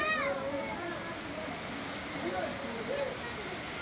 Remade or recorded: recorded